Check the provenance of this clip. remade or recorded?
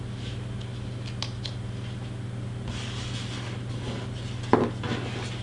recorded